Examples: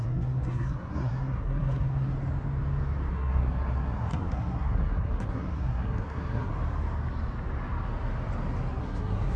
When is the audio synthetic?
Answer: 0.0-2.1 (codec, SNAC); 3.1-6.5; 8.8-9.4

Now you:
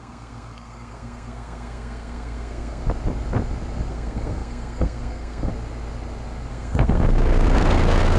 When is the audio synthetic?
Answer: 0.0-2.8 (codec, SNAC); 3.9-5.5; 6.5-8.2